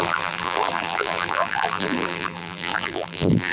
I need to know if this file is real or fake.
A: fake